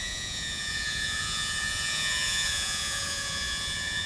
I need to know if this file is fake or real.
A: fake